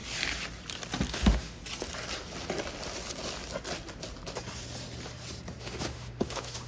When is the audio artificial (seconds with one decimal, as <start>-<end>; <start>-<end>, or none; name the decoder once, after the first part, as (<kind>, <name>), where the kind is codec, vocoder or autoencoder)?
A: 1.1-1.6 (autoencoder, DAC-VAE); 5.6-6.7